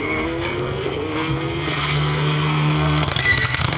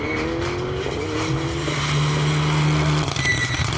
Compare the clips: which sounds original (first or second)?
second